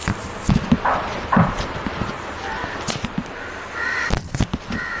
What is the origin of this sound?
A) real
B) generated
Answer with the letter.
A